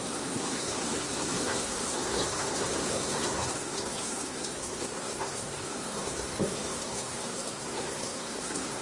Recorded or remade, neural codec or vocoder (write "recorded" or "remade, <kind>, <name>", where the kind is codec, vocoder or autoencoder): remade, codec, SNAC